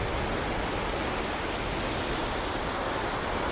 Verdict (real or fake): real